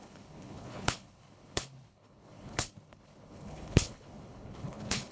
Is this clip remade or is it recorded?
remade